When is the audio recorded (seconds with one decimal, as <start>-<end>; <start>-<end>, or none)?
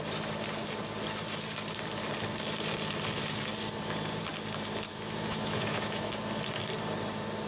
0.0-4.9; 6.1-7.5